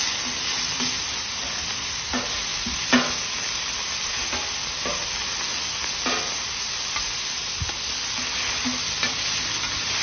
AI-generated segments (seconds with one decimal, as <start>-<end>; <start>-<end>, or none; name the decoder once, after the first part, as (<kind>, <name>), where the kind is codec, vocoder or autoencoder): none